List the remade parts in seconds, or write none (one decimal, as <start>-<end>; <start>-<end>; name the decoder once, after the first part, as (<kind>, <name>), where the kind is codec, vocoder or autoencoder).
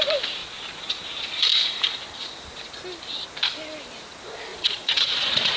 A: 0.4-1.0 (vocoder, Vocos); 4.5-5.6